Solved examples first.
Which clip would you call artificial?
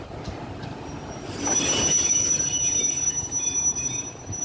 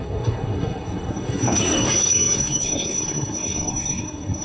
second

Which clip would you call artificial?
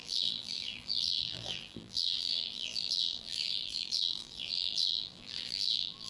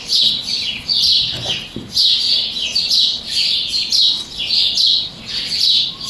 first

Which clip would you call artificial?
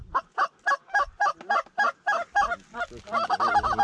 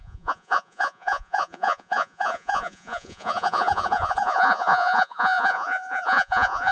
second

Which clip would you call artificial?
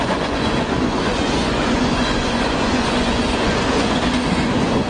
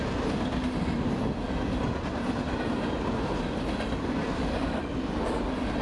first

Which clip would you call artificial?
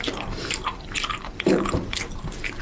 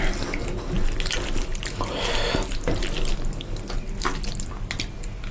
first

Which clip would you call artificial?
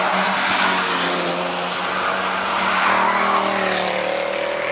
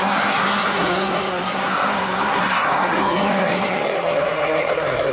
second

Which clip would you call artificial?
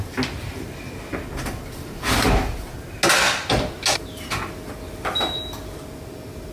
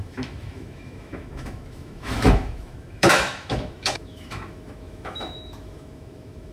second